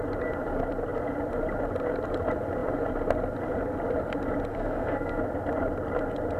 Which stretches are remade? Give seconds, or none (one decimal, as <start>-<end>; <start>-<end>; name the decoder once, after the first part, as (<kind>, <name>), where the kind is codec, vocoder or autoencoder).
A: 4.5-5.2 (codec, SNAC)